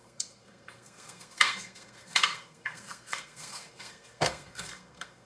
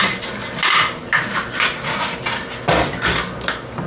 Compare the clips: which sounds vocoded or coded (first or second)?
first